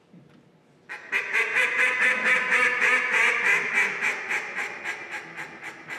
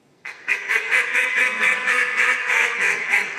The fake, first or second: second